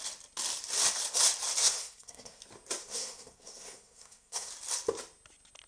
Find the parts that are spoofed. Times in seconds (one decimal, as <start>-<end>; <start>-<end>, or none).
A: 1.6-2.4; 2.8-4.5